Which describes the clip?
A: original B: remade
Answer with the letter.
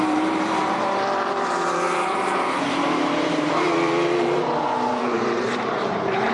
B